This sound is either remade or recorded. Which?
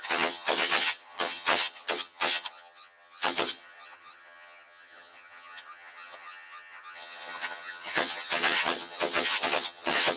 remade